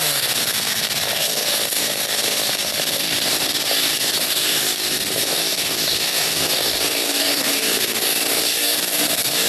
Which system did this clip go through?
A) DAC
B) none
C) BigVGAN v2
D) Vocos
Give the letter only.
A